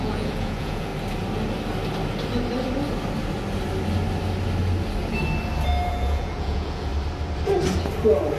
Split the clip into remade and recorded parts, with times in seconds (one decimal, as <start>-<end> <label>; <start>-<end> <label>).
0.0-0.9 remade; 0.9-5.9 recorded; 5.9-6.9 remade; 6.9-8.4 recorded